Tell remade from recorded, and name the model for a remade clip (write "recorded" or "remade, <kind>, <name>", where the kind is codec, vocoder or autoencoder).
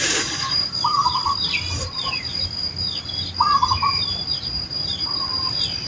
remade, vocoder, BigVGAN v2